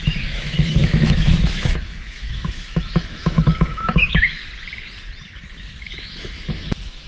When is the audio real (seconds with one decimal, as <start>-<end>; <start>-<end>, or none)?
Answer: 4.4-5.8